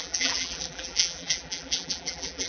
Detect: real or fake fake